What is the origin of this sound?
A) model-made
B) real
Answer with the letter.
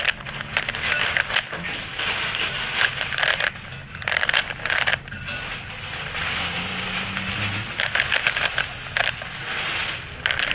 B